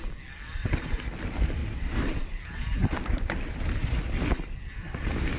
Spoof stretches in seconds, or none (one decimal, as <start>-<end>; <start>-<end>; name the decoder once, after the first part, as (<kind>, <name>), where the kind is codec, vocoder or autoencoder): 1.6-3.2 (vocoder, BigVGAN v2)